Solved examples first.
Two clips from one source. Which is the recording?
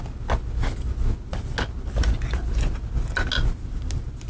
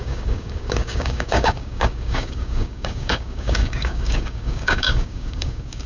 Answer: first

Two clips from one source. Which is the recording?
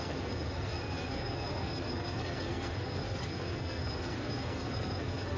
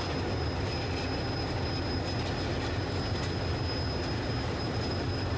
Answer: second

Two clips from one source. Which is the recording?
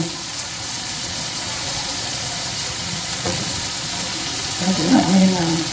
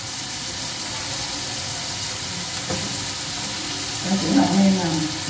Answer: second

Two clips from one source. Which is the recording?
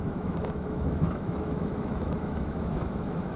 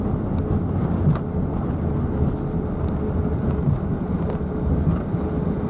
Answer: second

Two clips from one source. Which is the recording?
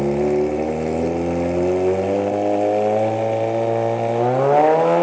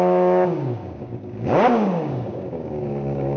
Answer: first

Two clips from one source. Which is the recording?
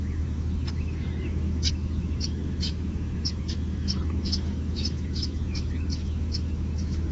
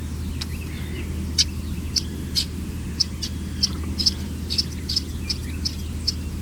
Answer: second